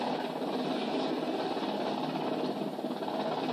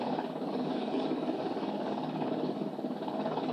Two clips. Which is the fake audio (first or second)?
second